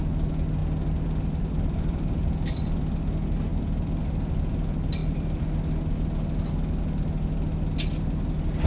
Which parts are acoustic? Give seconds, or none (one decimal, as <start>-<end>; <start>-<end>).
0.0-0.6; 3.0-3.5; 4.0-5.0; 5.7-8.7